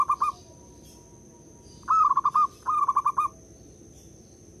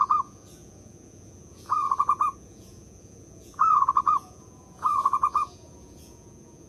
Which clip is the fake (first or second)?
second